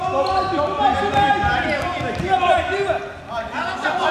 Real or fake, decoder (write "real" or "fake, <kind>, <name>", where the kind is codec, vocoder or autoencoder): real